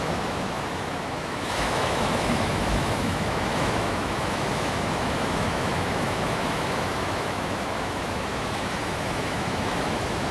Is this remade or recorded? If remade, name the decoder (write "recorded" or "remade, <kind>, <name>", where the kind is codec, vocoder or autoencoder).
remade, autoencoder, DAC-VAE